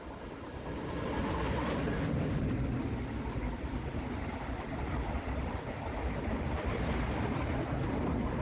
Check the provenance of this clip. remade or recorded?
recorded